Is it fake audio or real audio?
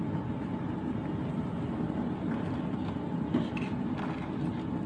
real